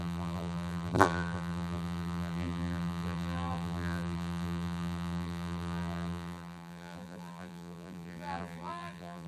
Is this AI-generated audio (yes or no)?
yes